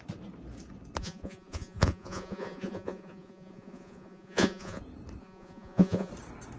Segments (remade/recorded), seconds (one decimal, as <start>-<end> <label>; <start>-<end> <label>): 0.0-1.0 recorded; 1.0-4.8 remade; 4.8-5.2 recorded; 5.2-6.1 remade; 6.1-6.6 recorded